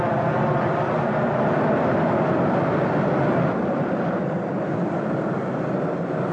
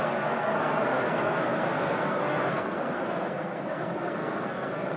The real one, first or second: first